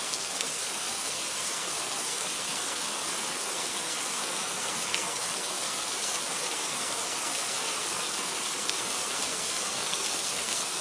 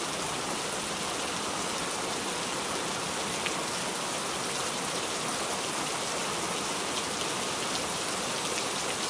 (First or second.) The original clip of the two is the second